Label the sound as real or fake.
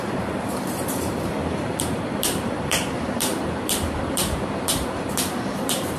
fake